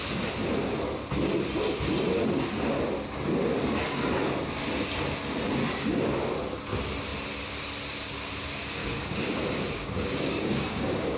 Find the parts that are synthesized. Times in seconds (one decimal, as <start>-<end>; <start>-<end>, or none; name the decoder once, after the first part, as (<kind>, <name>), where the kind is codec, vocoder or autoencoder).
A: 8.8-11.2 (codec, DAC)